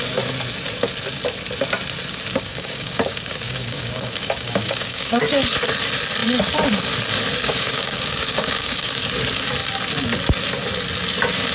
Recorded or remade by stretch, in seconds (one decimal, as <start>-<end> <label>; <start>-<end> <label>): 0.0-2.3 recorded; 2.3-5.3 remade; 5.3-7.4 recorded; 7.4-8.9 remade; 8.9-11.5 recorded